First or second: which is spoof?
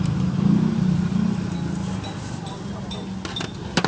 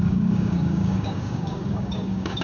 second